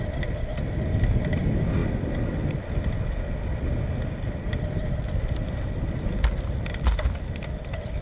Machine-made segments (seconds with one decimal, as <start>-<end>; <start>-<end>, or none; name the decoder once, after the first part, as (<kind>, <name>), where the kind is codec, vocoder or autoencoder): none